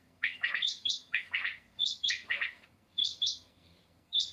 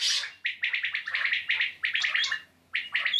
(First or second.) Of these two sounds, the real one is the second